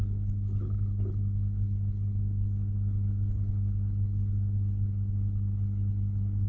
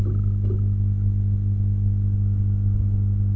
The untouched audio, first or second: second